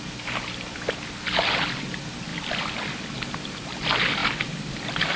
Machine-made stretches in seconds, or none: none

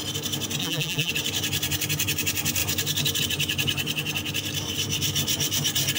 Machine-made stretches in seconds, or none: 0.6-1.1 (vocoder, BigVGAN v2)

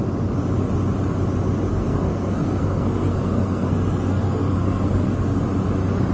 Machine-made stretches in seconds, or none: 1.7-5.4 (codec, SNAC)

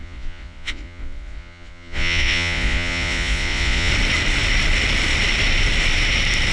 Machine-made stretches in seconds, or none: 0.0-3.9 (vocoder, Vocos)

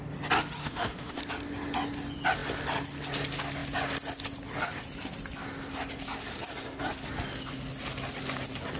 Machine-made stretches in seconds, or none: 0.6-1.2 (autoencoder, DAC-VAE)

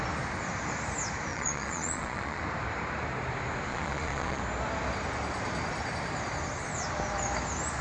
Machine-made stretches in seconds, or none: 1.3-2.4 (vocoder, Vocos); 3.7-4.4

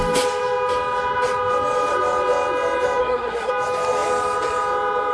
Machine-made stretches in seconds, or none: 3.0-3.5 (codec, SNAC)

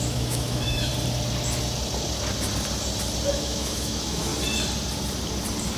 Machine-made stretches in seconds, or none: 0.0-0.9 (autoencoder, DAC-VAE); 3.3-4.3